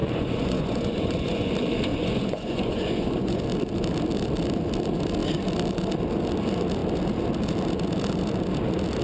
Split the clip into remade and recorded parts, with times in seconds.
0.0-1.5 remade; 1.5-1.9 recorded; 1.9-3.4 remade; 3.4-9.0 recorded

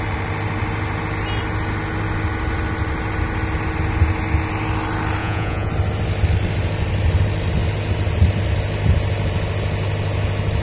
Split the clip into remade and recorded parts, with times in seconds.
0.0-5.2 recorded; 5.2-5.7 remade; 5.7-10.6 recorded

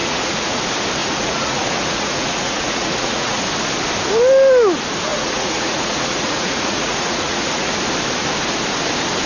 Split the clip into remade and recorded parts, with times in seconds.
0.0-0.6 remade; 0.6-1.0 recorded; 1.0-3.4 remade; 3.4-5.1 recorded; 5.1-7.7 remade; 7.7-9.3 recorded

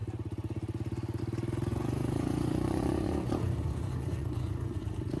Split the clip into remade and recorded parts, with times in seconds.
0.0-1.7 recorded; 1.7-4.8 remade; 4.8-5.2 recorded

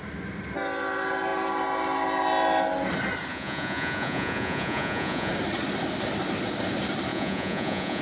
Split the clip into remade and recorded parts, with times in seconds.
0.0-3.3 recorded; 3.3-5.3 remade; 5.3-7.1 recorded; 7.1-8.0 remade

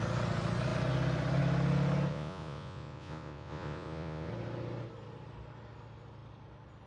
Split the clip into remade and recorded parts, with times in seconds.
0.0-2.1 recorded; 2.1-4.3 remade; 4.3-6.9 recorded